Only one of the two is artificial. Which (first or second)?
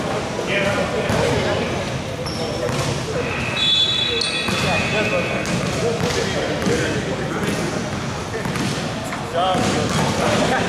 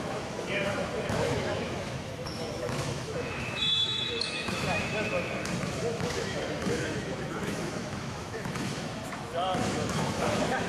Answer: second